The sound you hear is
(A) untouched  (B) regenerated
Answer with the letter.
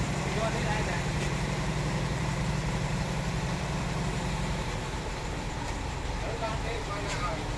B